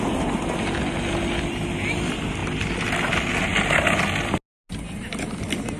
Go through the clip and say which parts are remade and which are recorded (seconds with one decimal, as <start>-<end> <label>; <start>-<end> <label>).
0.0-5.8 recorded